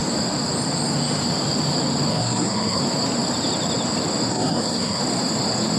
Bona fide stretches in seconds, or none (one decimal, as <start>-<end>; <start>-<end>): 0.0-2.1; 2.8-4.3; 5.0-5.8